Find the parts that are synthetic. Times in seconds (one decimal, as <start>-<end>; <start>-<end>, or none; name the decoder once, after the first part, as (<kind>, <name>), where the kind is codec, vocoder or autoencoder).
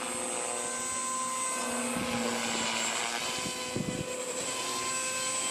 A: none